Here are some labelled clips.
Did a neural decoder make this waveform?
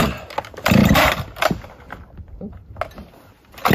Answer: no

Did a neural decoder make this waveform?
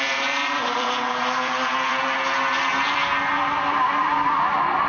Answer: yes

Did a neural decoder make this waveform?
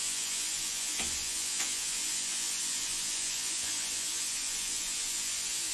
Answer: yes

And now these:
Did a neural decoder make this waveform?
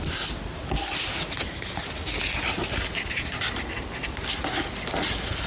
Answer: no